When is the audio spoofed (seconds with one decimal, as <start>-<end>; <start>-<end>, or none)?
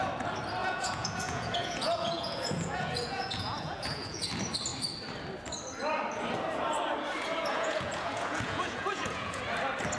0.6-4.3; 7.5-9.4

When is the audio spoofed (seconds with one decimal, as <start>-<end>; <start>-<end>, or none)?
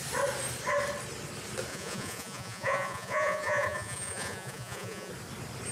1.7-5.1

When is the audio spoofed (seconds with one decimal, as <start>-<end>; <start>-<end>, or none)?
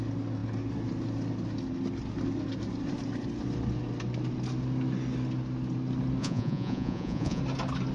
6.2-7.4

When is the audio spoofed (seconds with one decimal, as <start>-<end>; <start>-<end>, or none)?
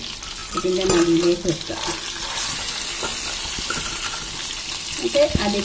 none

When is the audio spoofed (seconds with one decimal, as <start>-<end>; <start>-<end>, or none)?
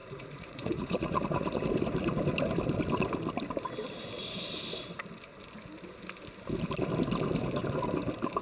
0.0-1.7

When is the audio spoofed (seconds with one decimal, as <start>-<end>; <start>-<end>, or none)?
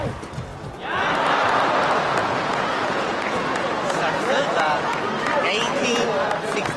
2.2-5.0